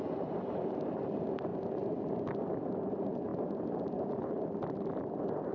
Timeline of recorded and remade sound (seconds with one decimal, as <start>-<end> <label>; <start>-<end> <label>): 0.0-5.5 remade